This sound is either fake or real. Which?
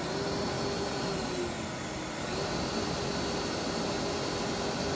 real